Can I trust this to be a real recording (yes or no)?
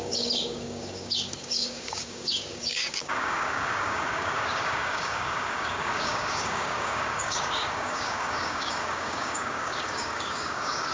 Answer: no